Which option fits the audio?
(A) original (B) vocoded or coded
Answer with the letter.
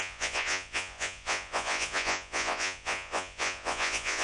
B